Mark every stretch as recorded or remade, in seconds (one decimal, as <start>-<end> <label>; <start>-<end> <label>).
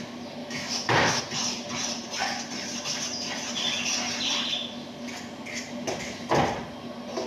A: 0.0-0.4 recorded; 0.4-1.2 remade; 1.2-7.3 recorded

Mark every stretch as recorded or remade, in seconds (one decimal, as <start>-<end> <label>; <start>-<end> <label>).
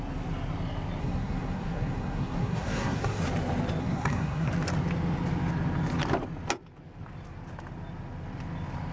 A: 0.0-1.0 recorded; 1.0-3.2 remade; 3.2-3.8 recorded; 3.8-4.5 remade; 4.5-8.9 recorded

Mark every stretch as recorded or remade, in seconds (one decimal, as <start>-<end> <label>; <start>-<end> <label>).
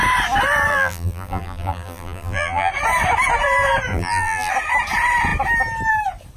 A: 0.0-0.7 recorded; 0.7-2.7 remade; 2.7-3.9 recorded; 3.9-4.5 remade; 4.5-6.4 recorded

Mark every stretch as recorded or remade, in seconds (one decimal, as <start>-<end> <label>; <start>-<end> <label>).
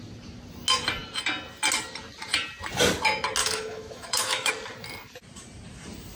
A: 0.0-3.4 recorded; 3.4-4.5 remade; 4.5-6.2 recorded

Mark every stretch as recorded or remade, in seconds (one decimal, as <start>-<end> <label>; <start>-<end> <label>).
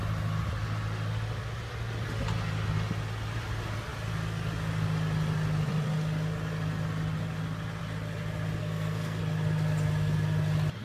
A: 0.0-8.6 recorded; 8.6-9.2 remade; 9.2-10.8 recorded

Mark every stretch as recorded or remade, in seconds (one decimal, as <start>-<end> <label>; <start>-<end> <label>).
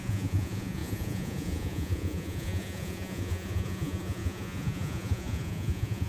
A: 0.0-6.1 remade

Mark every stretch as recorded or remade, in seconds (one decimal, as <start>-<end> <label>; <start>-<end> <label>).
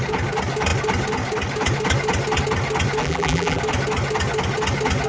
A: 0.0-3.0 recorded; 3.0-3.6 remade; 3.6-5.1 recorded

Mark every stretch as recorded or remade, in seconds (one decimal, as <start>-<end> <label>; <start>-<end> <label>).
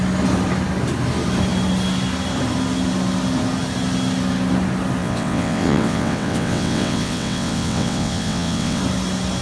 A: 0.0-5.0 recorded; 5.0-8.8 remade; 8.8-9.4 recorded